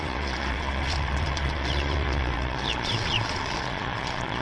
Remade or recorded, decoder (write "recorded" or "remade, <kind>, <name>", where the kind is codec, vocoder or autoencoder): remade, vocoder, Vocos